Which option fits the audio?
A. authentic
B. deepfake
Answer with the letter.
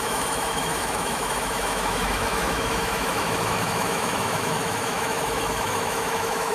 B